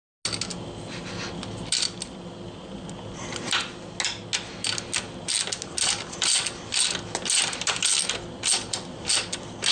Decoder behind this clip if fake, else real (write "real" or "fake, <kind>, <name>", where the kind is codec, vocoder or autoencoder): real